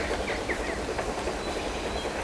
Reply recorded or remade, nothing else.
recorded